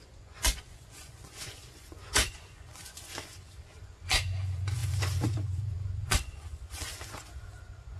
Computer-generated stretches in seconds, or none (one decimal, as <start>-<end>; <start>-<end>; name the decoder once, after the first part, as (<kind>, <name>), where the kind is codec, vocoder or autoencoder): 0.0-8.0 (vocoder, Vocos)